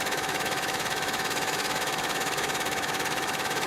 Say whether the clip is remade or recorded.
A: remade